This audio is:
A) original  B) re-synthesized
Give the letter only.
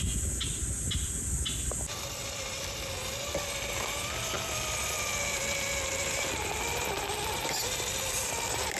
A